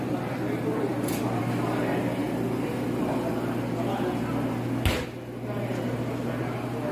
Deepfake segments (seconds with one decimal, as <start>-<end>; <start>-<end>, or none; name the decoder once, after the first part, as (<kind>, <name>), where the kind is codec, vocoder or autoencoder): none